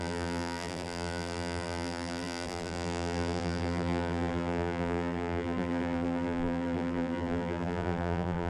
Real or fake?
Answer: fake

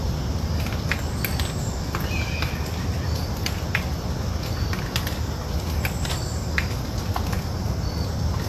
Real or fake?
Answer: real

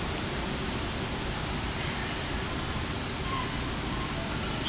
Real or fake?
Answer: fake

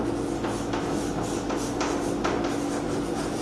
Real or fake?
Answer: real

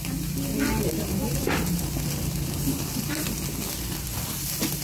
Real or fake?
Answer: fake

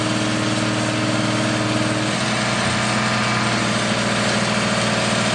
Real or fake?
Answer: real